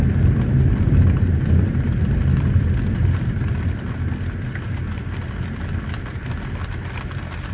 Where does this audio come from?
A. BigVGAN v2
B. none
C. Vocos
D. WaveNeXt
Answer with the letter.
B